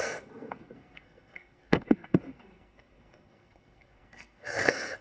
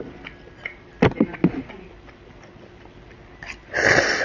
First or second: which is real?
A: second